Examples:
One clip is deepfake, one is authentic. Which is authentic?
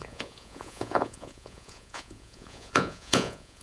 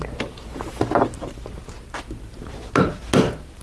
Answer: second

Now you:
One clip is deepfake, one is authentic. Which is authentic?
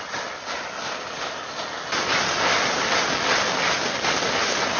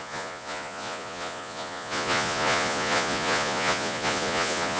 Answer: first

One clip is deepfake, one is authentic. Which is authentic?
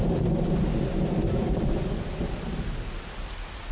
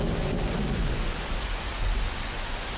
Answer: first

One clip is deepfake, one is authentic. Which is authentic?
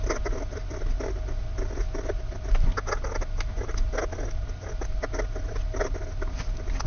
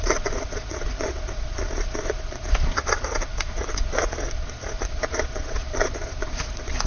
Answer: first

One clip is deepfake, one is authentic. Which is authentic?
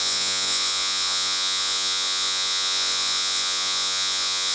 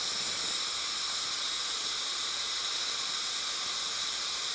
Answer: second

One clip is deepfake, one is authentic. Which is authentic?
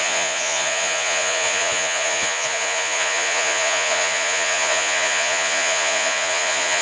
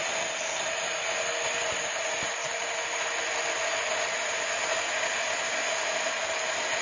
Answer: second